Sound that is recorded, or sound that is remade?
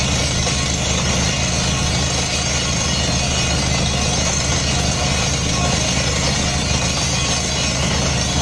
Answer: recorded